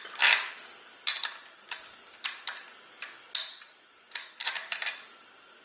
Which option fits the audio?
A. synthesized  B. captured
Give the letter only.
B